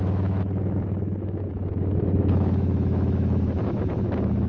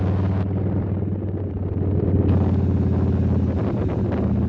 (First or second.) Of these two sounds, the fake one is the first